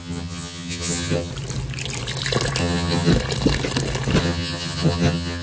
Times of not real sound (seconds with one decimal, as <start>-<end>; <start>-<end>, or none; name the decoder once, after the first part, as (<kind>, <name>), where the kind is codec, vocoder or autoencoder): 0.0-1.3 (vocoder, HiFi-GAN); 2.6-3.1; 4.2-5.4